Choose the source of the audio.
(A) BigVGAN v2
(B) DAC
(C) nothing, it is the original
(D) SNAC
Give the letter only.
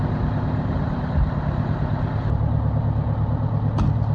C